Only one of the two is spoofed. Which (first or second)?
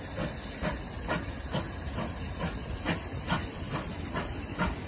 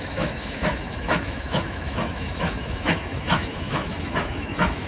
second